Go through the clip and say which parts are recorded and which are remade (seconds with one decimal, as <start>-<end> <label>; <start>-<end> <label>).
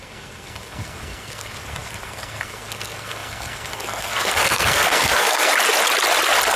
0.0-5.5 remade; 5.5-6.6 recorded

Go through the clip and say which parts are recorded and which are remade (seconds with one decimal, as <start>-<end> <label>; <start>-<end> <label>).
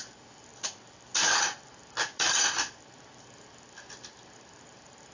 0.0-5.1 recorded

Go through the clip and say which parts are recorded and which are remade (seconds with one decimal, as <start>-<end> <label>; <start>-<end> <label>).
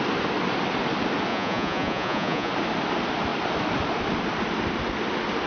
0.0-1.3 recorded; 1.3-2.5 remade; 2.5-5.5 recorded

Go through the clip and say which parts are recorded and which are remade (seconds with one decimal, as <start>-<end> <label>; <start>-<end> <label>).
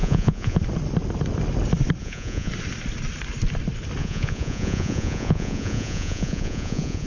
0.0-0.6 remade; 0.6-2.0 recorded; 2.0-2.5 remade; 2.5-4.0 recorded; 4.0-7.1 remade